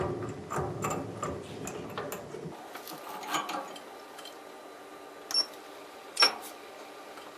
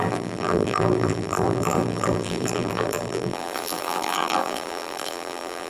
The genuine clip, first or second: first